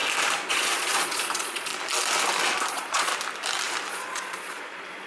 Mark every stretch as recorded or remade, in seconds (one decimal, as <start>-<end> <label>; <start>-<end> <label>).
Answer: 0.0-0.5 recorded; 0.5-1.7 remade; 1.7-2.7 recorded; 2.7-3.1 remade; 3.1-3.9 recorded; 3.9-5.1 remade